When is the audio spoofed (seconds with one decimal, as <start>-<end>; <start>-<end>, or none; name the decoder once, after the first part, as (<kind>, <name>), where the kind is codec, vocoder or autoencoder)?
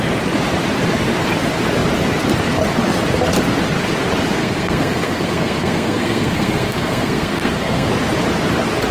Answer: 4.4-7.9 (codec, SNAC)